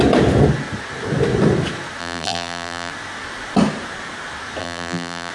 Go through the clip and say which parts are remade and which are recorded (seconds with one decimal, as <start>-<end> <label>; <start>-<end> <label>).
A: 0.0-2.0 recorded; 2.0-2.9 remade; 2.9-4.6 recorded; 4.6-5.3 remade